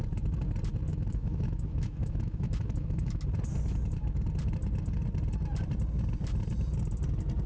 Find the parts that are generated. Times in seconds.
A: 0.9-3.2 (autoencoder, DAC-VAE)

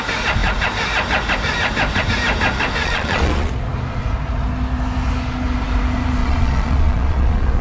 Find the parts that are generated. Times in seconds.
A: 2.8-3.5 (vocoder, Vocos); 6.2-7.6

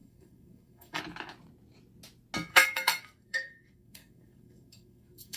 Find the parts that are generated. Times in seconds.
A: 0.0-1.0 (codec, SNAC); 2.5-5.4

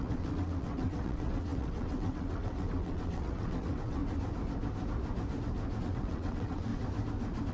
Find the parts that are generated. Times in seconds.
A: 0.0-4.0 (vocoder, WaveNeXt); 5.8-6.7

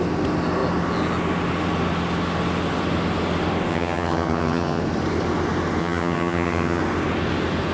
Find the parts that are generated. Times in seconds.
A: 3.7-4.8 (vocoder, HiFi-GAN); 5.8-6.8